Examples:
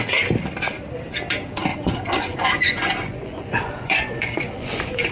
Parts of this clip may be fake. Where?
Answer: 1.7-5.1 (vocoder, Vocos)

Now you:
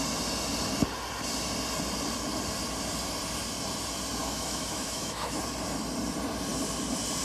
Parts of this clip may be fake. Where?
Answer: 4.2-5.4 (autoencoder, DAC-VAE)

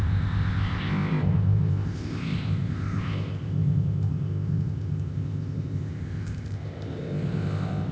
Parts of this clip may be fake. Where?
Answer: 0.0-7.9 (codec, ZipCodec)